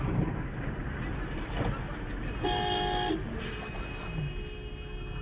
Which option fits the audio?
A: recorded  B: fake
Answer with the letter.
A